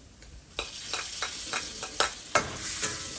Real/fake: real